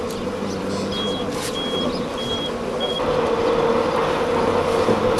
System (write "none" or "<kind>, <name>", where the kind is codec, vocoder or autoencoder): none